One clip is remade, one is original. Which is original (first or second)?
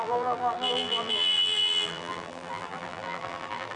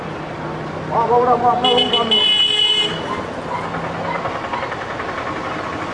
second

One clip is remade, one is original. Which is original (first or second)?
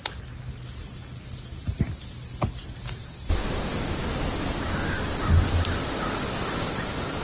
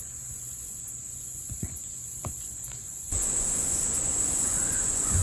first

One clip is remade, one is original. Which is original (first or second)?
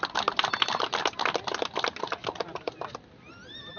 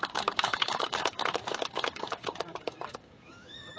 first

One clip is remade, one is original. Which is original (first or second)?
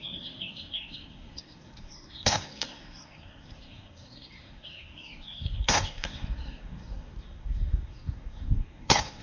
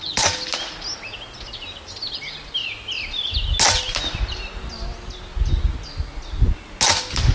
second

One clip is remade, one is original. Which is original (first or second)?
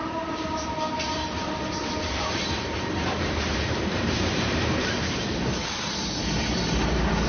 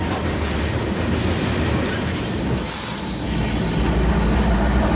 second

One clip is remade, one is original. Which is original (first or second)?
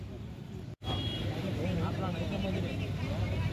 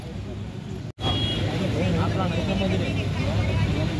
second